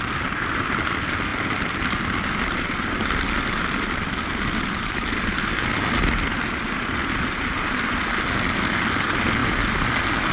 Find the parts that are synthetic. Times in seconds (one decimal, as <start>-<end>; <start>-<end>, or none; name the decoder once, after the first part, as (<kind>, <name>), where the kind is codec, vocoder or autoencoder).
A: none